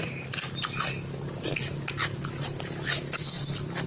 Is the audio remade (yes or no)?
no